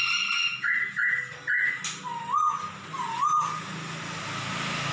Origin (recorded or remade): recorded